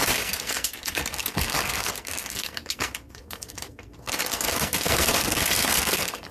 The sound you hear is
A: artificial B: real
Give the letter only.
A